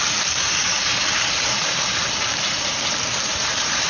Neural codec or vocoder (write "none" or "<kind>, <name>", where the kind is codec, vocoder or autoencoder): vocoder, BigVGAN v2